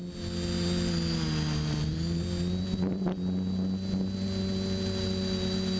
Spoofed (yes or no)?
no